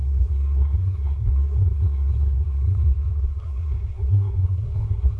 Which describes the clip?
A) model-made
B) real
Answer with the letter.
A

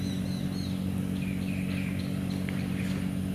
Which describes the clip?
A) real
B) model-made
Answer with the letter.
A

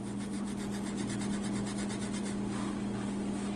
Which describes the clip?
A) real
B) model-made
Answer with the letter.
A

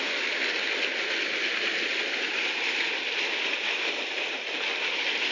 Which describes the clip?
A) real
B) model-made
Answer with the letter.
A